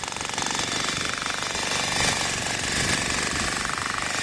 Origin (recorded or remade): recorded